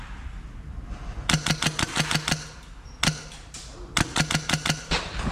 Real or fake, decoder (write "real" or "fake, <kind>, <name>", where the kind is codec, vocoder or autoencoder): real